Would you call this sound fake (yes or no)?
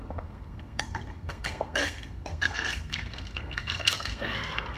yes